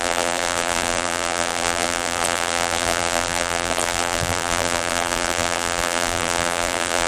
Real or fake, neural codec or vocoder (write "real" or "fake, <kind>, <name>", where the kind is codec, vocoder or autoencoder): fake, vocoder, BigVGAN v2